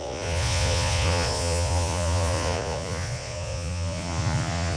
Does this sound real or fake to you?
fake